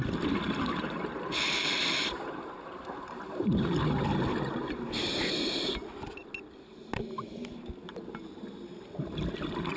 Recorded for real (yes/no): yes